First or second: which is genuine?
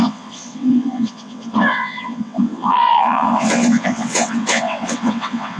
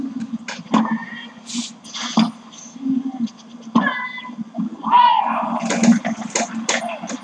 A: second